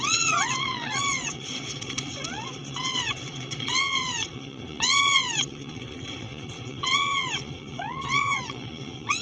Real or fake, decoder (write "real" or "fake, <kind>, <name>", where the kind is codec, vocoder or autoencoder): fake, vocoder, WaveNeXt